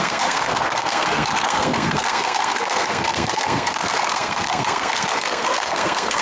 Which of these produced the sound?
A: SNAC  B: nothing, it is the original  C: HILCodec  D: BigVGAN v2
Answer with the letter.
A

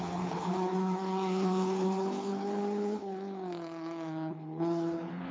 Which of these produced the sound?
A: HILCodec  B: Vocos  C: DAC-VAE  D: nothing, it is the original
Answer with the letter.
A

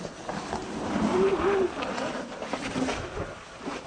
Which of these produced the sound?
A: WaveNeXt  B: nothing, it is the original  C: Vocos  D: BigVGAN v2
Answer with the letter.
B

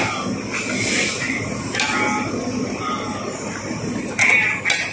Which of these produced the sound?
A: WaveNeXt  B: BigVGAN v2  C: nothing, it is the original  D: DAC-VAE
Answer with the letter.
C